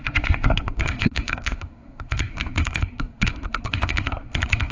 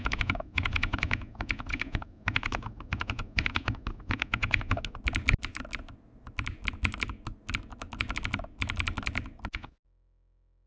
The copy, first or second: first